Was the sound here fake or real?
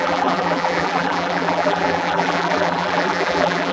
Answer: fake